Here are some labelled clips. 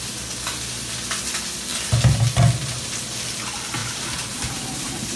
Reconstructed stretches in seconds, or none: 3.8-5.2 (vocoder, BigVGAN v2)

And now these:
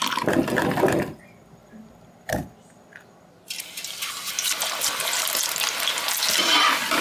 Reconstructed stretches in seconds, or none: none